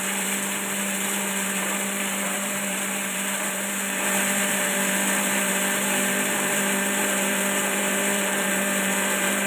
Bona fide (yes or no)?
no